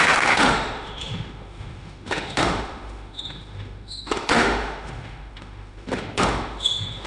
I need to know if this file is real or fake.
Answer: fake